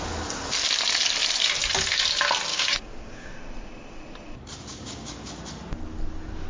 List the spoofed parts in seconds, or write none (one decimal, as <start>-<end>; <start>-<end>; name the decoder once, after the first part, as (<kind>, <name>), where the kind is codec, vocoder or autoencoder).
2.5-3.3 (codec, DAC); 4.7-5.3